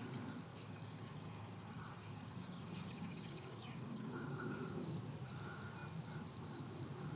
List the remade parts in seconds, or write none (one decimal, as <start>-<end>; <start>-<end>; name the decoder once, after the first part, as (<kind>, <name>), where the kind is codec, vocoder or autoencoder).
0.5-4.4 (codec, DAC)